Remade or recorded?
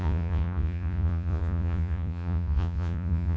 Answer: remade